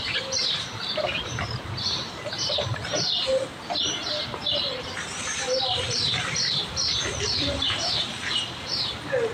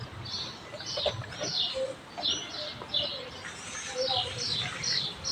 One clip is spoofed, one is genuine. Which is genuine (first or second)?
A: second